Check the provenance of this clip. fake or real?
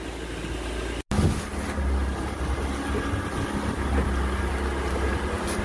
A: real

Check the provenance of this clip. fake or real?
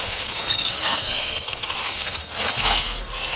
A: fake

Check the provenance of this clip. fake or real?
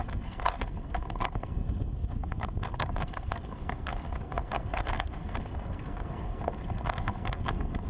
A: fake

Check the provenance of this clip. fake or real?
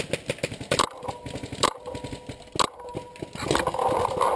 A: real